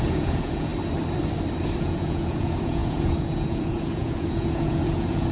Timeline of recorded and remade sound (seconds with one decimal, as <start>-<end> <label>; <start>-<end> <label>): 0.0-0.7 remade; 0.7-1.8 recorded; 1.8-5.3 remade